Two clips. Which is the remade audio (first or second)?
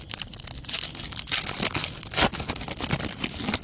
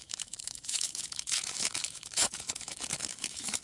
second